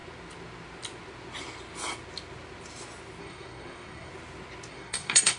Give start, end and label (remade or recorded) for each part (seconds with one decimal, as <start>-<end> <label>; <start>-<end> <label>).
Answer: 0.0-3.2 recorded; 3.2-4.1 remade; 4.1-4.7 recorded; 4.7-5.4 remade